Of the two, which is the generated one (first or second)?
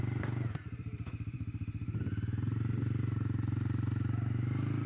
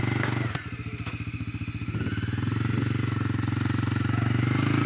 first